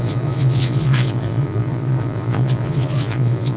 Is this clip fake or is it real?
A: fake